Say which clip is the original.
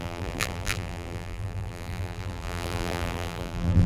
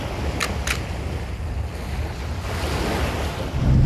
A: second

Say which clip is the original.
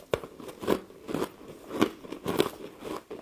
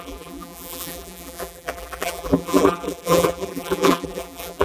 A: first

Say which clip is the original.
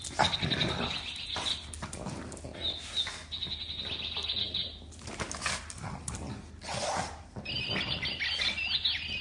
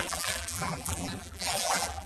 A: first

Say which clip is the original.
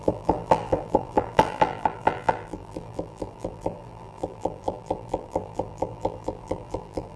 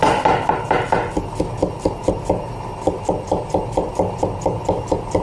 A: second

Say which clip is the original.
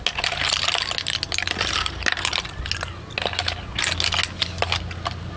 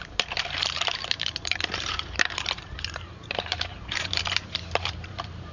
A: first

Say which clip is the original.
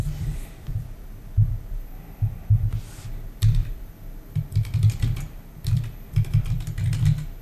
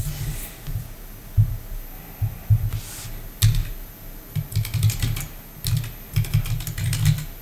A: second